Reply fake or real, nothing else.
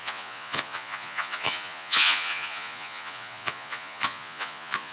fake